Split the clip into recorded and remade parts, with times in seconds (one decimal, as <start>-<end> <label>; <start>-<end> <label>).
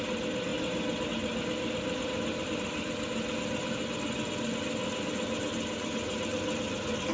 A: 0.0-7.1 recorded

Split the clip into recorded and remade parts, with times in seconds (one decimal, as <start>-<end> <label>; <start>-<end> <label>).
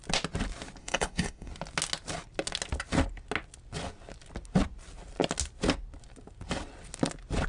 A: 0.0-0.8 recorded; 0.8-1.5 remade; 1.5-7.5 recorded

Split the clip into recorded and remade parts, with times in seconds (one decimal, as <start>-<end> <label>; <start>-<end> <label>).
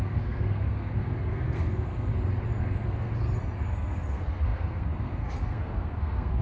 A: 0.0-2.1 remade; 2.1-2.6 recorded; 2.6-3.1 remade; 3.1-3.7 recorded; 3.7-6.4 remade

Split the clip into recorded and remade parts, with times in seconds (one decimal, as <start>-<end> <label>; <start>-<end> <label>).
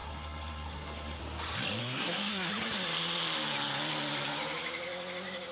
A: 0.0-1.2 remade; 1.2-1.8 recorded; 1.8-2.5 remade; 2.5-5.5 recorded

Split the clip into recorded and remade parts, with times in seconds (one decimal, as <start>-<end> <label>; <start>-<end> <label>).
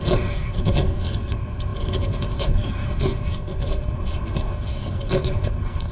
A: 0.0-5.9 remade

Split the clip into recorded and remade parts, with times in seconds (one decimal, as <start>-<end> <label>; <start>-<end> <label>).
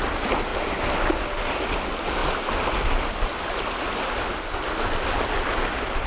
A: 0.0-6.1 recorded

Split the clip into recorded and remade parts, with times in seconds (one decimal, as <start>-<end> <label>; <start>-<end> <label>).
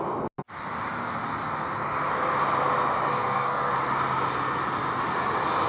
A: 0.0-3.1 recorded; 3.1-3.7 remade; 3.7-5.7 recorded